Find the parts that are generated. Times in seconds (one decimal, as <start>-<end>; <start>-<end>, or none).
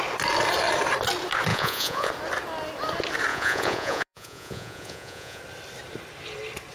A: 1.5-2.1; 3.3-5.4